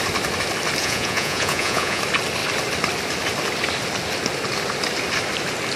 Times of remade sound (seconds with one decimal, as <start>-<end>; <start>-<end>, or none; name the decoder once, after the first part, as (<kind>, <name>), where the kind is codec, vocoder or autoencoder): 0.8-2.0 (vocoder, Vocos)